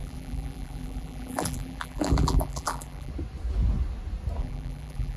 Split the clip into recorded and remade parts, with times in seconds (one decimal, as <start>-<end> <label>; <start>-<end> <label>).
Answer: 0.0-3.1 remade; 3.1-4.4 recorded; 4.4-5.2 remade